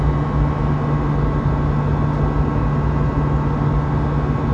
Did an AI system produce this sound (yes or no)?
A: no